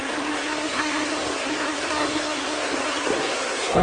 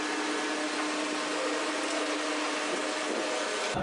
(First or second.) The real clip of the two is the second